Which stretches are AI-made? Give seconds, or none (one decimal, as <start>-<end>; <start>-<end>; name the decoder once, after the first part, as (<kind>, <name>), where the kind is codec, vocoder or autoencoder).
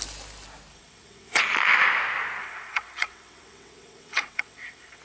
0.7-1.4 (vocoder, WaveNeXt); 2.4-5.0